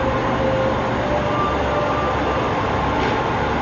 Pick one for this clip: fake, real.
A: real